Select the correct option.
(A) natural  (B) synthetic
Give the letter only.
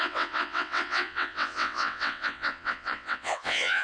B